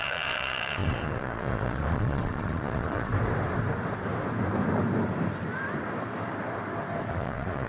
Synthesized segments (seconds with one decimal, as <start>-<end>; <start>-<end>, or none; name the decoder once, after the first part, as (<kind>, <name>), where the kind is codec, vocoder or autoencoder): 0.0-3.1 (vocoder, Vocos); 7.1-7.7